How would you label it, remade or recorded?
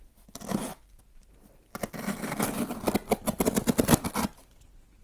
recorded